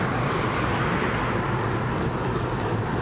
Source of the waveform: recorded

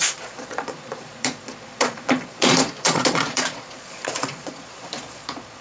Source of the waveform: remade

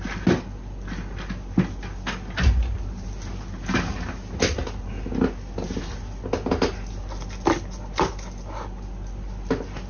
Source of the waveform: recorded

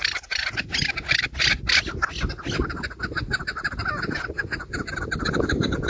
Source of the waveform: recorded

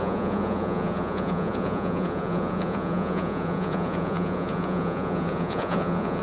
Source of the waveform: remade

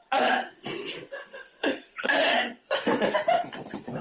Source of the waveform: remade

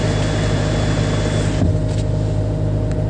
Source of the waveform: recorded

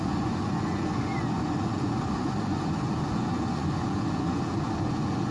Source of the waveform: remade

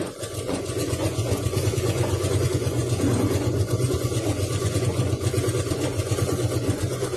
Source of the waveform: remade